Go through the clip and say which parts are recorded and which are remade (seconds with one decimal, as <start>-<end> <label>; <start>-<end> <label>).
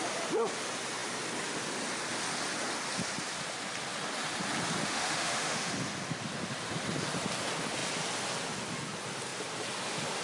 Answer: 0.0-4.8 recorded; 4.8-5.7 remade; 5.7-10.2 recorded